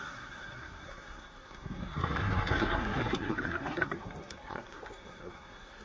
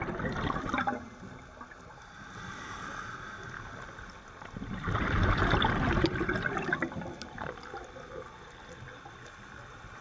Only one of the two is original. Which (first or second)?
second